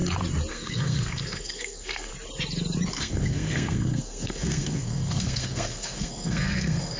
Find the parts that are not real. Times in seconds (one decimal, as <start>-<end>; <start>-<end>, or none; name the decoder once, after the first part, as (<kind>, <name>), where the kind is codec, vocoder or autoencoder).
0.5-2.1 (codec, SNAC); 2.9-7.0